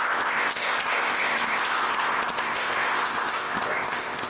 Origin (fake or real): fake